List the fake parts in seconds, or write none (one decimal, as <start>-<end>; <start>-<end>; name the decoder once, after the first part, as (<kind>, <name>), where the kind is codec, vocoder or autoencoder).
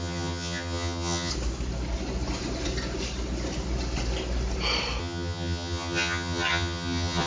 0.0-1.3 (vocoder, HiFi-GAN); 5.0-7.3